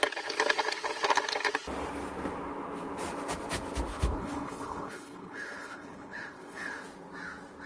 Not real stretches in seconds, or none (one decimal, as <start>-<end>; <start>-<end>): 3.9-6.8